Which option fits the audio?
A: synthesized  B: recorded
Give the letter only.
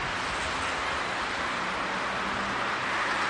B